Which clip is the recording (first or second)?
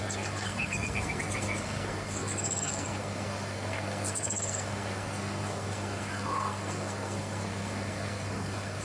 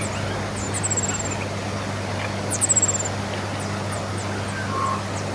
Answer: second